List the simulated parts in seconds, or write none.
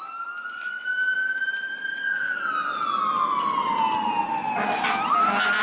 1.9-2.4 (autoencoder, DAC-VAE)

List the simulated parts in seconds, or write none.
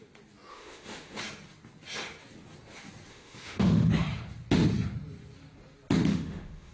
0.5-1.2 (autoencoder, DAC-VAE); 3.1-3.9; 6.1-6.7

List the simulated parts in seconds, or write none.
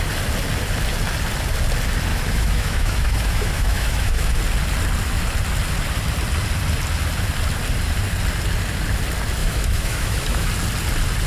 2.1-4.3 (autoencoder, DAC-VAE); 9.4-10.5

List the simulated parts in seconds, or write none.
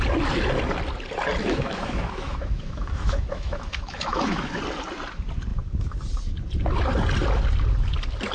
1.4-4.6 (autoencoder, DAC-VAE)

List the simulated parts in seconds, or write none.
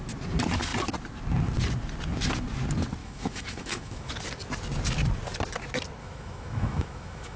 3.0-4.1 (autoencoder, DAC-VAE); 6.0-7.4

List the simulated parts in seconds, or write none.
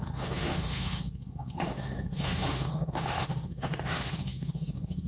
0.0-5.1 (autoencoder, DAC-VAE)